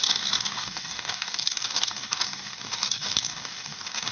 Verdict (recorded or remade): remade